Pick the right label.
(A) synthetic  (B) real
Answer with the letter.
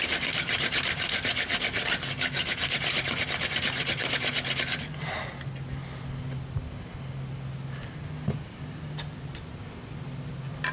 B